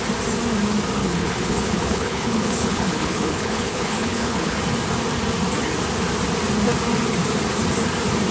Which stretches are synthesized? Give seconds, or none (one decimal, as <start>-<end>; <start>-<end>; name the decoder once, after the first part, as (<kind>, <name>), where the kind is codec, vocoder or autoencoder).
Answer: 1.0-4.6 (codec, HILCodec)